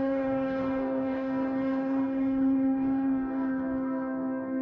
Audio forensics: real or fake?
fake